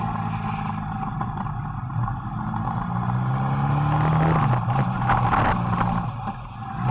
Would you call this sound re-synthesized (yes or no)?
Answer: no